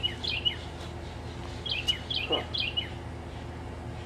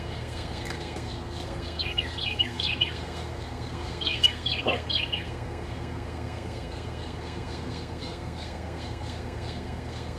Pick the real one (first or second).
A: first